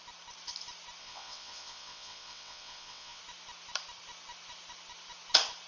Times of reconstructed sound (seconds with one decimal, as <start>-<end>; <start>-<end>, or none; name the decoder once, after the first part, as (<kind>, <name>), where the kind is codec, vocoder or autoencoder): 1.0-3.2 (vocoder, WaveNeXt)